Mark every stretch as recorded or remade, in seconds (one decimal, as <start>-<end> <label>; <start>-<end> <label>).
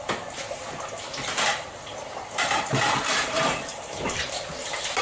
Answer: 0.0-1.5 recorded; 1.5-4.5 remade; 4.5-5.0 recorded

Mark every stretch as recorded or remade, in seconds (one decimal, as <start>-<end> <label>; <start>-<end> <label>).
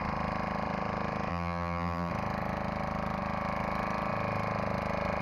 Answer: 0.0-1.3 recorded; 1.3-2.1 remade; 2.1-5.2 recorded